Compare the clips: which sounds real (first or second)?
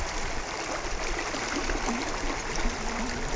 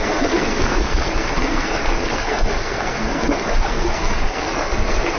first